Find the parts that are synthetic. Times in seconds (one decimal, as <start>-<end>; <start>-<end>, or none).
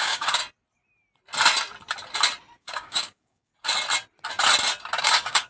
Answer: 0.0-0.4; 2.6-3.5; 5.0-5.5